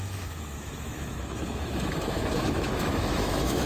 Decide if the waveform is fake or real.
fake